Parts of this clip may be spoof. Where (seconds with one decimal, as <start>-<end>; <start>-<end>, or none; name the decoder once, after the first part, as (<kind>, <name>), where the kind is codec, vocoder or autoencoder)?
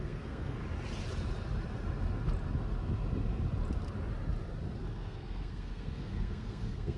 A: 0.0-0.6 (codec, SNAC); 4.8-7.0